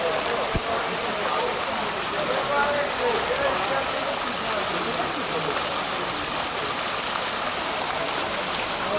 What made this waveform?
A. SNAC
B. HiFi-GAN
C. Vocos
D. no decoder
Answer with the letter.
D